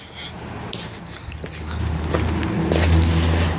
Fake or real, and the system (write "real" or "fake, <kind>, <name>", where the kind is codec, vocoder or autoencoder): real